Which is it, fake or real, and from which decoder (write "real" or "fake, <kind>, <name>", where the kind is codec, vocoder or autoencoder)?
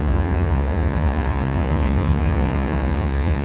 fake, vocoder, Vocos